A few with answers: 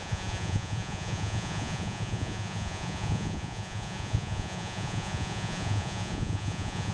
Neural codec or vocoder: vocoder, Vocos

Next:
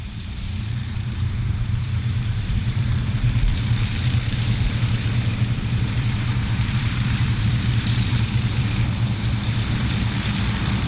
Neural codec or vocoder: vocoder, BigVGAN v2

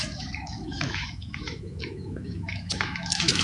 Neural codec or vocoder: autoencoder, DAC-VAE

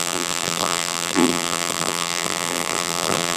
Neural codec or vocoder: vocoder, BigVGAN v2